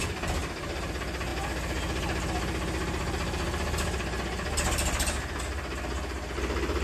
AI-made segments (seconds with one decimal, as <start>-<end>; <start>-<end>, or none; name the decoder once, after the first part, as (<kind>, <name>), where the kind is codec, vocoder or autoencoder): none